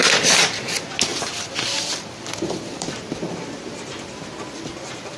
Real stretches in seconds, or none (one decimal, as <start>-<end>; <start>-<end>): 0.0-1.1; 4.2-5.2